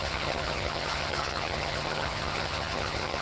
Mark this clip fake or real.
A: fake